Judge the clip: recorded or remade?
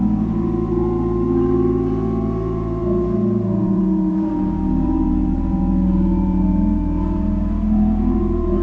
remade